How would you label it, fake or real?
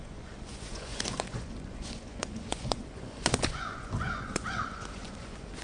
fake